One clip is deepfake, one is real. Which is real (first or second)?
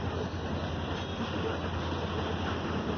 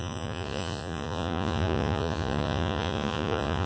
first